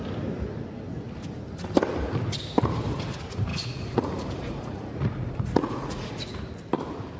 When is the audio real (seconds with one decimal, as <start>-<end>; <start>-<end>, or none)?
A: 0.0-3.5; 6.4-7.2